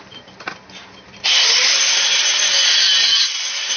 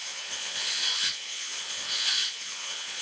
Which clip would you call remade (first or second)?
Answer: second